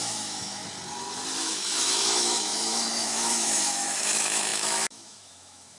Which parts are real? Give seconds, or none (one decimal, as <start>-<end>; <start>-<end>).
0.6-1.4